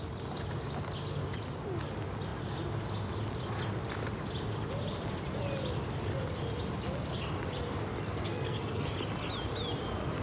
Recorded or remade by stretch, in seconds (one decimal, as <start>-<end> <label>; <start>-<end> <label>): 0.0-8.1 recorded; 8.1-8.9 remade; 8.9-10.2 recorded